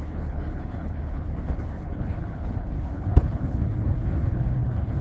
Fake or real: fake